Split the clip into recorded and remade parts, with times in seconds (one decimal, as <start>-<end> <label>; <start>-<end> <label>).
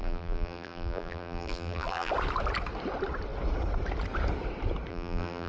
0.0-2.1 remade; 2.1-4.9 recorded; 4.9-5.5 remade